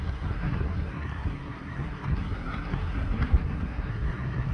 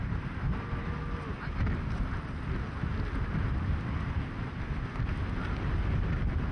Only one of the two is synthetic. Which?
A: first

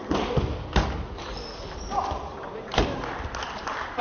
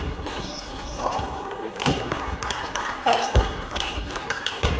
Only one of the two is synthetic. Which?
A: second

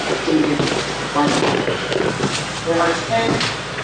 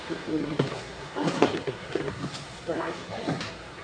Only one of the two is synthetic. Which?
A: second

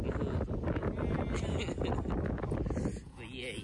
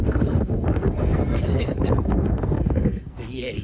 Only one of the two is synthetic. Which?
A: second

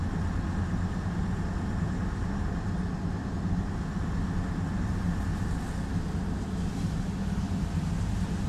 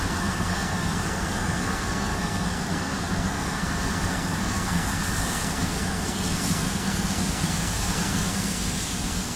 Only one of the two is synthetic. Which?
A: second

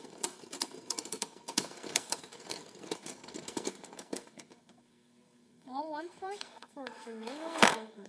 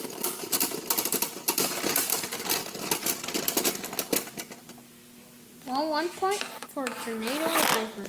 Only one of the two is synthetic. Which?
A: first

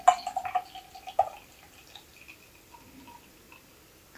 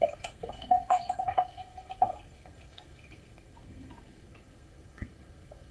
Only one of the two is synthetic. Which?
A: second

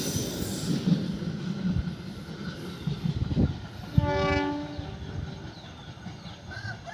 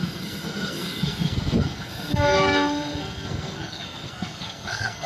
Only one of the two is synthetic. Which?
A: second